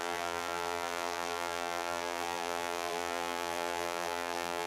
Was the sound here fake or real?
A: fake